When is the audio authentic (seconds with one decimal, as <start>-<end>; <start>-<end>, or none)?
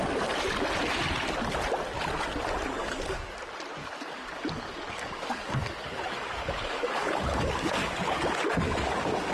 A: 0.0-2.8; 3.4-3.8